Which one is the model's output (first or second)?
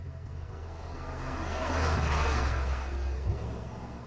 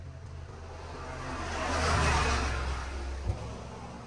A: first